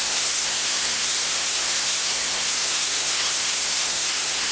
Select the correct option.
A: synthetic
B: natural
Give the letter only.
A